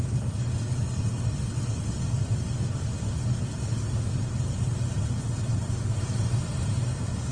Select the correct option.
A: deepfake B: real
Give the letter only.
B